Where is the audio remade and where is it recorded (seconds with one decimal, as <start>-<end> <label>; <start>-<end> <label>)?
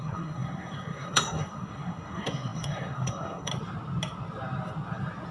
0.0-3.5 remade; 3.5-5.3 recorded